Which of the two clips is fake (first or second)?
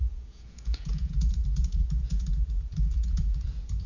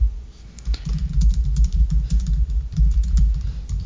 first